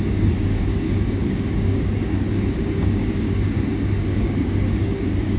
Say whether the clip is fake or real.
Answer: fake